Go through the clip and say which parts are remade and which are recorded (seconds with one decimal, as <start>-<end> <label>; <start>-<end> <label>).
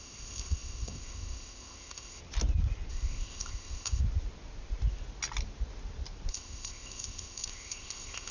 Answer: 0.0-2.2 remade; 2.2-2.9 recorded; 2.9-4.0 remade; 4.0-6.3 recorded; 6.3-8.3 remade